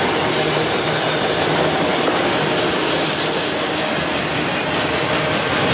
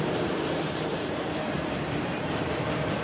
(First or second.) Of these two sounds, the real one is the first